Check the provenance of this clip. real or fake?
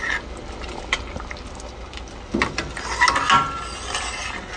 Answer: real